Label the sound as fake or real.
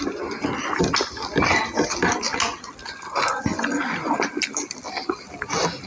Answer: real